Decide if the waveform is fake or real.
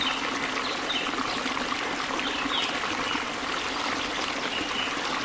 real